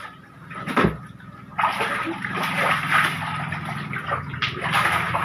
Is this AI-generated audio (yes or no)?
no